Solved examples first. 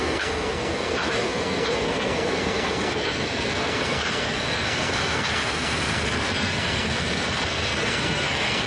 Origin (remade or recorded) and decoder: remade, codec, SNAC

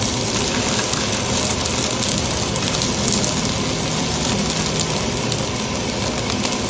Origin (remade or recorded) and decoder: recorded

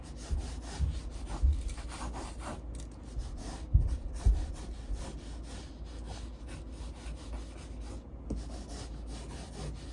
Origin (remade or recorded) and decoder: recorded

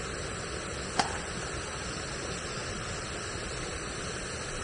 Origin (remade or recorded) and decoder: recorded